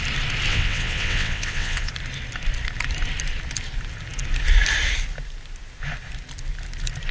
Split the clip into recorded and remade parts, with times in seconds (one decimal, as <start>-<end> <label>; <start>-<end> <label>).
0.0-0.5 recorded; 0.5-1.9 remade; 1.9-7.1 recorded